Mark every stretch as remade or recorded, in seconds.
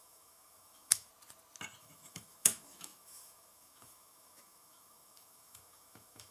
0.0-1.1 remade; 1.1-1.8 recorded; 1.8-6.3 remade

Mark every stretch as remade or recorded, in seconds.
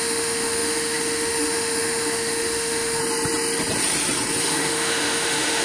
0.0-3.0 remade; 3.0-4.4 recorded; 4.4-5.6 remade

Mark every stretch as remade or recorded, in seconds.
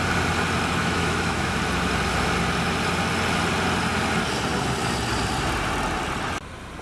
0.0-0.8 recorded; 0.8-1.6 remade; 1.6-6.8 recorded